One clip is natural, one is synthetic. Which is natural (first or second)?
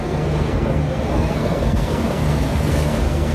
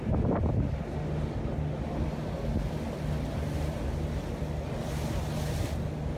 second